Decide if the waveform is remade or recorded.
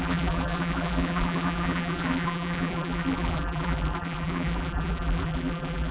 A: remade